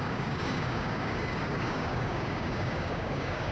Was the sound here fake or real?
fake